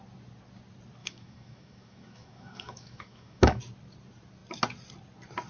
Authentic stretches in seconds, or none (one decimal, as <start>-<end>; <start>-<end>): 0.0-1.0; 3.6-5.5